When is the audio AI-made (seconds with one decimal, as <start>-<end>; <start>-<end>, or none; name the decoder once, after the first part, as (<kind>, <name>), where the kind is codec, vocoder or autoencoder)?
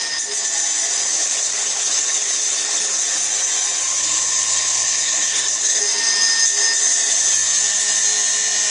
1.1-3.0 (codec, HILCodec); 3.8-5.8